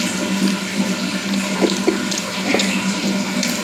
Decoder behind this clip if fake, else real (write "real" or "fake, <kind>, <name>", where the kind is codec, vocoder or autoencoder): real